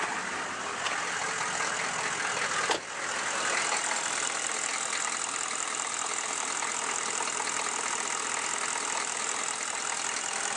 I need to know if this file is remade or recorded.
recorded